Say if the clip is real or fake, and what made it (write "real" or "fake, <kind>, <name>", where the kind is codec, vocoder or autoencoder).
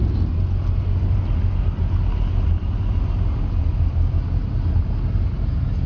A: real